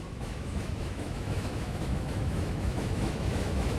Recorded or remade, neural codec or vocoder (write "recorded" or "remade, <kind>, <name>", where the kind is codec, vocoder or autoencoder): remade, autoencoder, DAC-VAE